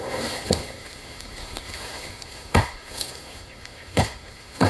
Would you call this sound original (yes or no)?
no